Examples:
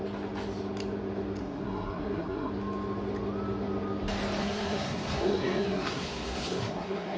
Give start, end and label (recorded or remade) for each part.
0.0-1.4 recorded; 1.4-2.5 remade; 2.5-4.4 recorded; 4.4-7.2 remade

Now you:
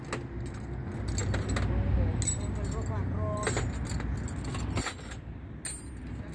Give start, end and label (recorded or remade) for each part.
0.0-6.3 recorded

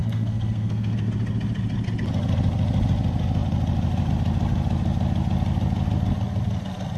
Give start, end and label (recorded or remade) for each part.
0.0-1.1 remade; 1.1-7.0 recorded

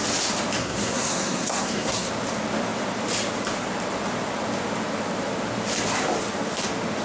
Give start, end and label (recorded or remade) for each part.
0.0-0.6 recorded; 0.6-2.1 remade; 2.1-7.0 recorded